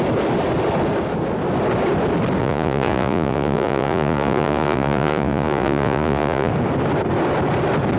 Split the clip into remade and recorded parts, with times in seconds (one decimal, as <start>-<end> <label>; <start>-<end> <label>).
0.0-2.4 recorded; 2.4-6.5 remade; 6.5-8.0 recorded